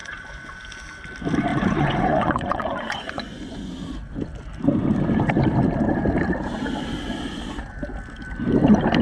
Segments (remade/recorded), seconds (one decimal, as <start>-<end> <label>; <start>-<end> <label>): 0.0-0.6 remade; 0.6-1.5 recorded; 1.5-3.7 remade; 3.7-9.0 recorded